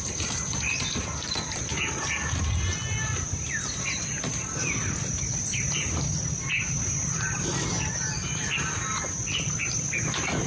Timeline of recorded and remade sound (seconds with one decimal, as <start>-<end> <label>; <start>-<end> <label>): 0.0-10.5 recorded